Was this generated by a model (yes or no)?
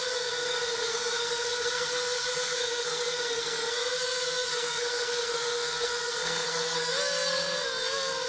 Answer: yes